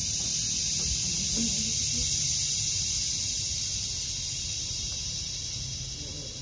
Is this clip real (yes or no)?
yes